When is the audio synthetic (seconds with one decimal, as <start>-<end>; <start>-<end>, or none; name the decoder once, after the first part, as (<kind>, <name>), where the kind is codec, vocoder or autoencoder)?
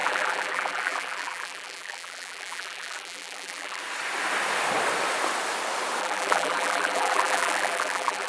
0.0-3.8 (vocoder, BigVGAN v2); 6.0-8.3